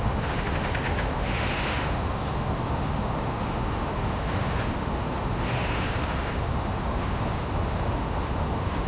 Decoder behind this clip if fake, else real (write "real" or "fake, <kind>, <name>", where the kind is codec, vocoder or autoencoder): fake, autoencoder, DAC-VAE